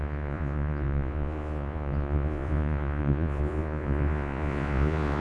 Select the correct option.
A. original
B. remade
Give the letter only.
B